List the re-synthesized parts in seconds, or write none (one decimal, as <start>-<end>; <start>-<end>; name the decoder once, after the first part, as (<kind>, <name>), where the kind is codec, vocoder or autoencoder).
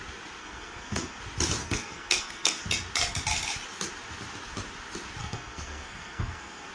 0.4-1.2 (codec, SNAC); 1.6-2.6; 5.2-6.7